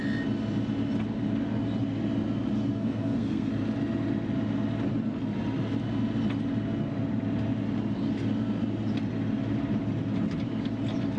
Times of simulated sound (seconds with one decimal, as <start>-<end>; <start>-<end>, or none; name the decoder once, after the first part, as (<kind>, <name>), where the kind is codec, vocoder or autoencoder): 2.7-3.5 (codec, SNAC)